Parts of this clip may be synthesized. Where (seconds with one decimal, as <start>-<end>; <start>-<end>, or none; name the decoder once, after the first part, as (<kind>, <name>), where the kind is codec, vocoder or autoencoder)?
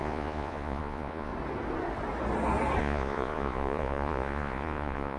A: 0.0-1.3 (vocoder, Vocos); 2.8-5.2